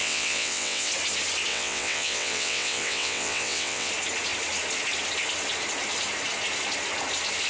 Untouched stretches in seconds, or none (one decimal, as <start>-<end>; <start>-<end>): 0.9-1.5; 3.9-7.5